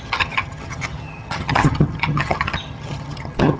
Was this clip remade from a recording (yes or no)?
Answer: yes